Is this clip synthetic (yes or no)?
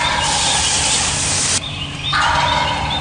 no